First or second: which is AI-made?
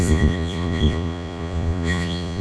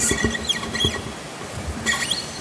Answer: first